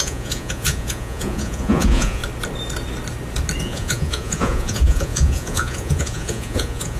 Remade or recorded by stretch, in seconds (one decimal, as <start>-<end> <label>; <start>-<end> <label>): 0.0-2.2 remade; 2.2-3.6 recorded; 3.6-7.0 remade

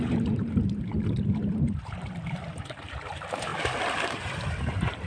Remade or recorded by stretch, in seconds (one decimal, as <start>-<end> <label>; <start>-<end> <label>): 0.0-3.5 remade; 3.5-4.0 recorded; 4.0-5.1 remade

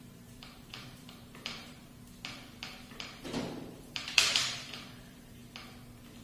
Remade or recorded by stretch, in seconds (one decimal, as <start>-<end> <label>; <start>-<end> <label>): 0.0-1.8 remade; 1.8-2.7 recorded; 2.7-5.4 remade; 5.4-6.2 recorded

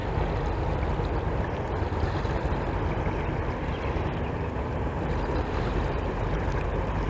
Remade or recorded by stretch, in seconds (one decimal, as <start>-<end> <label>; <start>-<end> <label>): 0.0-4.3 recorded; 4.3-7.1 remade

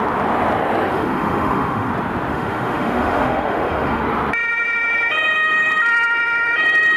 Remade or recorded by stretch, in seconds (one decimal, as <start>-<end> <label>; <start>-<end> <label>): 0.0-0.9 recorded; 0.9-1.9 remade; 1.9-2.3 recorded; 2.3-4.0 remade; 4.0-7.0 recorded

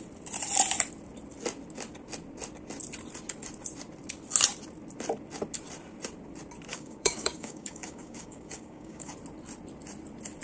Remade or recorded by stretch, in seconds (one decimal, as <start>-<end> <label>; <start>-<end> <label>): 0.0-6.7 recorded; 6.7-9.1 remade; 9.1-10.4 recorded

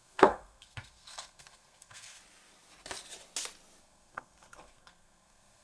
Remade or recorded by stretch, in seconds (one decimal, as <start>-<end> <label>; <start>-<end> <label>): 0.0-2.2 remade; 2.2-3.8 recorded; 3.8-5.6 remade

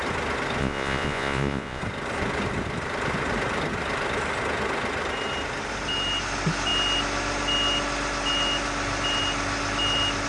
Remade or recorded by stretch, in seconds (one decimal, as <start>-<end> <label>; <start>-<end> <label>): 0.0-0.6 recorded; 0.6-1.8 remade; 1.8-10.3 recorded